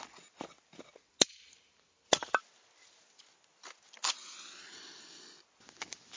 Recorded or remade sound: recorded